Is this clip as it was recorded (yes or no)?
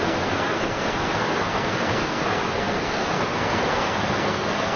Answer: no